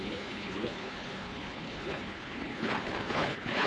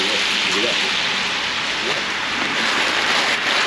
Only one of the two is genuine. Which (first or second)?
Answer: second